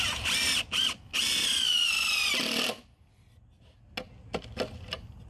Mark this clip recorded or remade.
recorded